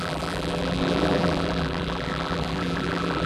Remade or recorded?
remade